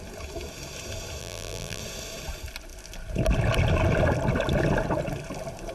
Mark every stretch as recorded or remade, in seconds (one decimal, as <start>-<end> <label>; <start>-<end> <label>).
0.0-1.2 recorded; 1.2-1.8 remade; 1.8-5.7 recorded